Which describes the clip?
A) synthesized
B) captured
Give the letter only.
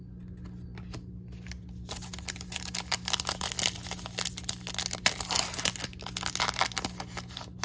B